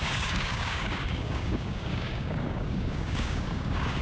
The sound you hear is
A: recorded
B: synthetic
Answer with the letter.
B